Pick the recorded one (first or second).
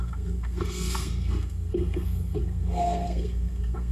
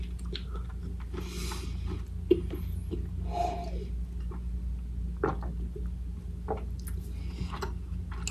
second